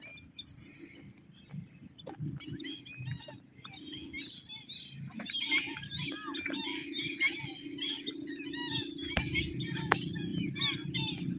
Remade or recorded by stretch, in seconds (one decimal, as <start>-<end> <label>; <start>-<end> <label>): 0.0-11.4 recorded